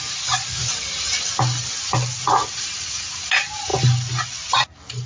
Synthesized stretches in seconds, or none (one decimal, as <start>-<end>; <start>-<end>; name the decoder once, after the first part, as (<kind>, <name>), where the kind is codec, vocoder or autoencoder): none